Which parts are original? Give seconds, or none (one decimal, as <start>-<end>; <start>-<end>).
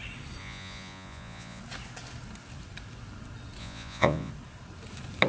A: 0.0-0.4; 1.6-3.6; 4.3-5.3